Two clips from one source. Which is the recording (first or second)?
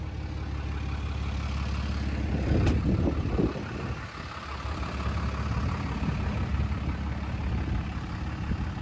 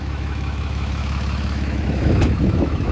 first